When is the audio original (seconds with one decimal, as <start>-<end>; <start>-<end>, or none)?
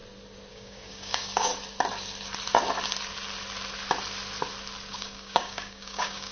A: 0.0-0.5; 1.5-4.9